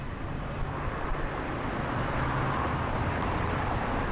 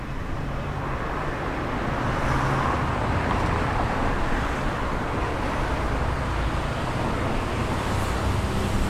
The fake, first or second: first